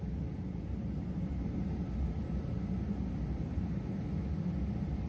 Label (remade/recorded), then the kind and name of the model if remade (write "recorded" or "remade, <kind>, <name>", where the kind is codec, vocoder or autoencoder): remade, vocoder, BigVGAN v2